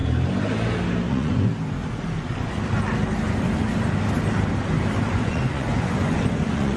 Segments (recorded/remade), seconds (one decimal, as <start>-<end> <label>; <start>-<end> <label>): 0.0-1.1 recorded; 1.1-1.5 remade; 1.5-5.1 recorded; 5.1-6.8 remade